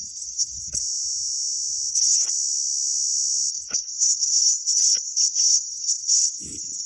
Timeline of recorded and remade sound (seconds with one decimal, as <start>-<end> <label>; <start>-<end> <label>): 0.0-0.8 remade; 0.8-1.9 recorded; 1.9-2.3 remade; 2.3-3.5 recorded; 3.5-6.9 remade